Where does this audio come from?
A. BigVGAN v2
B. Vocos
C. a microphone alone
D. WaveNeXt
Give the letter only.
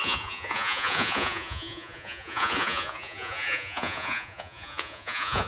B